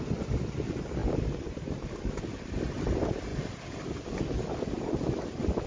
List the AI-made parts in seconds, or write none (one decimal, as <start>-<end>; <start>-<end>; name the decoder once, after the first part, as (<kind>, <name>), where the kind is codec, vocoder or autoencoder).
none